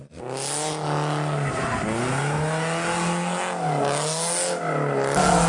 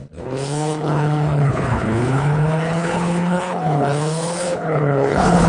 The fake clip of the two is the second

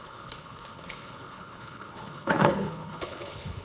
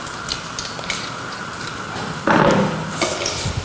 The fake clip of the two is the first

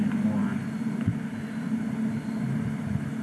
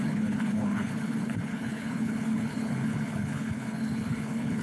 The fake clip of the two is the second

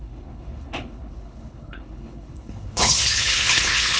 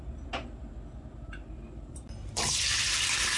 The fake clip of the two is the first